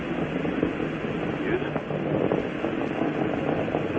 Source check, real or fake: real